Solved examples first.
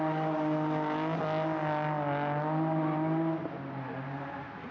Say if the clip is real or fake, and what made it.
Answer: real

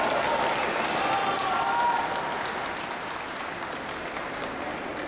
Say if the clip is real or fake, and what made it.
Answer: real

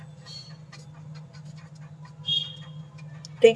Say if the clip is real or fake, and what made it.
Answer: real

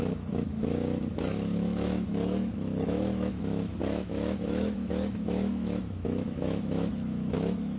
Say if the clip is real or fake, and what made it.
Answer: fake, autoencoder, DAC-VAE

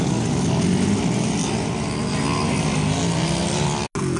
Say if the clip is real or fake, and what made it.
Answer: real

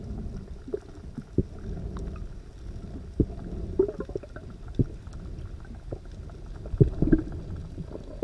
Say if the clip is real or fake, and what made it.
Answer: real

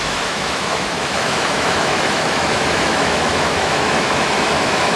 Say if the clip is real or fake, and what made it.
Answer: fake, autoencoder, DAC-VAE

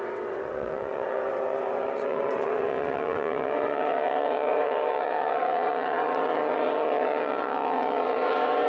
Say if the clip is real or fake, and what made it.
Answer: fake, vocoder, WaveNeXt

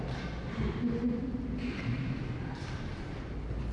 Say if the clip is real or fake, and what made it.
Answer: real